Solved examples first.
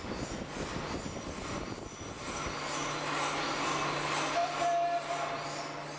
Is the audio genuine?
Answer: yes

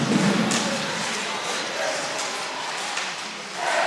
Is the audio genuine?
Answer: yes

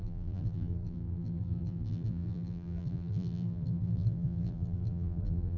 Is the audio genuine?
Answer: no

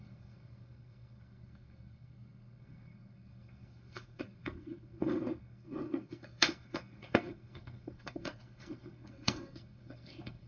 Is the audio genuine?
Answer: no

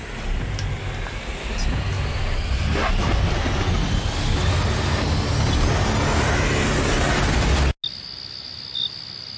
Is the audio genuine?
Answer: yes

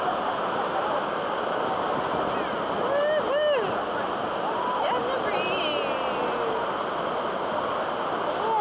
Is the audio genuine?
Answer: yes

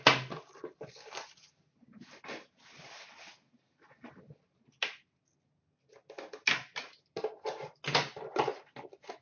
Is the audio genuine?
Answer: yes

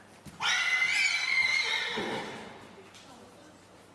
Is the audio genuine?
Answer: yes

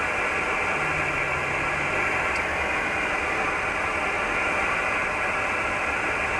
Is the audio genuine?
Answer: yes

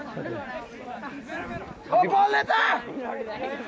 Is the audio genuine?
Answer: yes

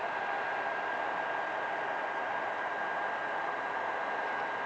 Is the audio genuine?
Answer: yes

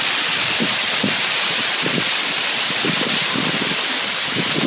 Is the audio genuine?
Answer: yes